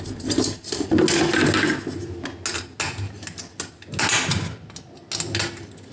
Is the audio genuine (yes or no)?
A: yes